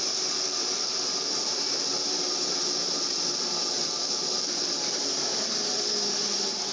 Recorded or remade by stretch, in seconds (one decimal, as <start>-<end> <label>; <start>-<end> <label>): 0.0-0.9 remade; 0.9-1.4 recorded; 1.4-6.7 remade

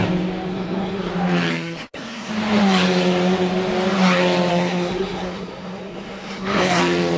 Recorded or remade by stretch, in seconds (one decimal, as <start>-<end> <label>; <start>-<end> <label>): 0.0-0.5 recorded; 0.5-1.1 remade; 1.1-1.5 recorded; 1.5-2.3 remade; 2.3-4.5 recorded; 4.5-6.8 remade; 6.8-7.2 recorded

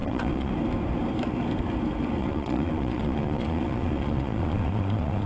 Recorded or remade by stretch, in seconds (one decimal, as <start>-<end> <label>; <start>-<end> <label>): 0.0-0.5 remade; 0.5-2.2 recorded; 2.2-5.3 remade

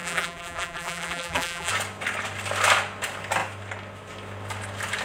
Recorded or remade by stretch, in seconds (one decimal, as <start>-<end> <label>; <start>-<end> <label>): 0.0-1.7 remade; 1.7-5.0 recorded

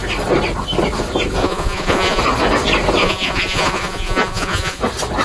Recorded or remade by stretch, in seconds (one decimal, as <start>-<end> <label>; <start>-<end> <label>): 0.0-1.4 recorded; 1.4-2.2 remade; 2.2-3.0 recorded; 3.0-4.8 remade; 4.8-5.2 recorded

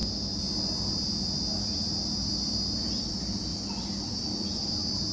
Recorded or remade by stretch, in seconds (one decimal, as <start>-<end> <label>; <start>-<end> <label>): 0.0-5.1 recorded